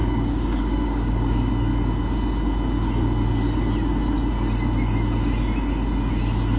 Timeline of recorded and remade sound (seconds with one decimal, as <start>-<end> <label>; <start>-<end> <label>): 0.0-1.5 remade; 1.5-6.6 recorded